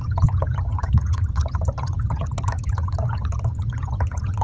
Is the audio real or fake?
fake